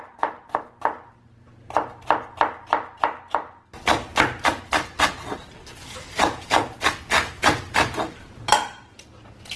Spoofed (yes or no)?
no